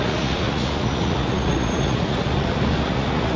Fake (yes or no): yes